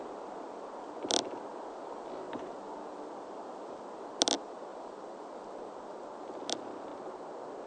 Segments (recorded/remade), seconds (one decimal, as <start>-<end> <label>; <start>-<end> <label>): 0.0-7.7 recorded